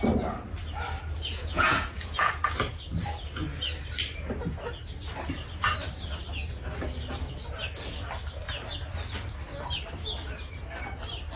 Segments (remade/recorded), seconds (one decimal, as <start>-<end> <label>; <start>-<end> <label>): 0.0-1.3 recorded; 1.3-2.3 remade; 2.3-11.4 recorded

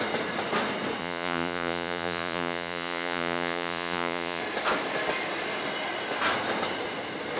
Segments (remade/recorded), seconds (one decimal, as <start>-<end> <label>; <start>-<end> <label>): 0.0-1.0 recorded; 1.0-4.4 remade; 4.4-7.4 recorded

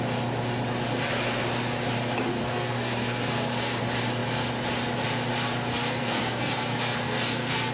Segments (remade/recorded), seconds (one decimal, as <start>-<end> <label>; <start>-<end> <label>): 0.0-2.3 recorded; 2.3-3.8 remade; 3.8-5.7 recorded; 5.7-7.7 remade

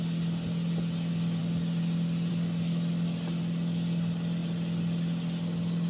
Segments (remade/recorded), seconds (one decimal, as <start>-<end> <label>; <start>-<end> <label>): 0.0-5.9 recorded

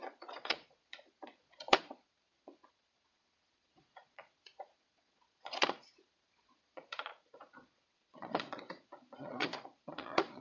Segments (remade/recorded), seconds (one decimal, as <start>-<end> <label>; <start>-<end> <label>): 0.0-10.4 remade

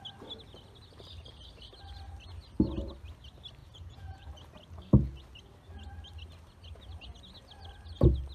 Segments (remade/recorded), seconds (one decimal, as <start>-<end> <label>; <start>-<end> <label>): 0.0-3.6 recorded; 3.6-4.3 remade; 4.3-8.3 recorded

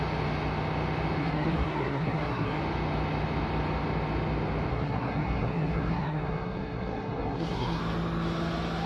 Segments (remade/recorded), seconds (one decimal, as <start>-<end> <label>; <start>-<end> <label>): 0.0-1.2 recorded; 1.2-2.6 remade; 2.6-4.7 recorded; 4.7-7.8 remade; 7.8-8.9 recorded